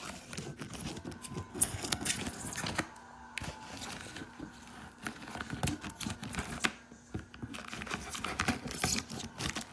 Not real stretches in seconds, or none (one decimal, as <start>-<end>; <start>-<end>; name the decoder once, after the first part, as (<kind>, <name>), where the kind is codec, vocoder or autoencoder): 1.5-2.1 (codec, SNAC)